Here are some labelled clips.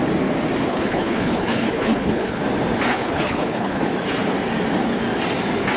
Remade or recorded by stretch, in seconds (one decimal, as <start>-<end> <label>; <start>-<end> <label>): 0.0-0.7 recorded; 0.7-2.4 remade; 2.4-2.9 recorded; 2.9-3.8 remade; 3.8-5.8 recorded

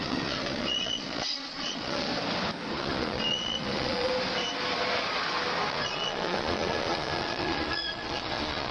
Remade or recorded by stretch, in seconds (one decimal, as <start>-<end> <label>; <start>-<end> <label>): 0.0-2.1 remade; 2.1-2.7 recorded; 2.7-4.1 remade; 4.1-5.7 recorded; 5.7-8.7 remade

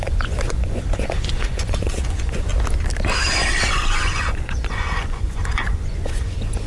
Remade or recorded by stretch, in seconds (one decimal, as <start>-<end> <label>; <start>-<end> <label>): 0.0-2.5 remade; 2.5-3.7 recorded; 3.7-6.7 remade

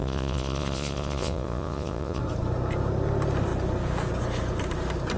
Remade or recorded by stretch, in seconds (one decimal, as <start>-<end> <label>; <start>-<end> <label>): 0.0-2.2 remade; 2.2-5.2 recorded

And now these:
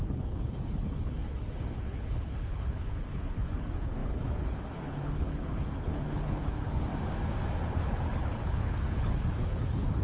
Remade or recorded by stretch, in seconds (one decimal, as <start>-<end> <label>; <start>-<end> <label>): 0.0-6.9 remade; 6.9-7.6 recorded; 7.6-10.0 remade